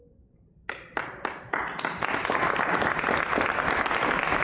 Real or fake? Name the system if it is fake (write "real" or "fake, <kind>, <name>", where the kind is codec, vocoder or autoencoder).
real